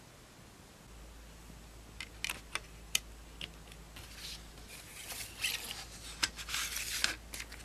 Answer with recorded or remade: recorded